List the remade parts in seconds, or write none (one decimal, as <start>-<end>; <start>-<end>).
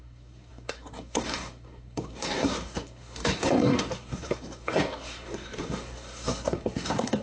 0.0-7.2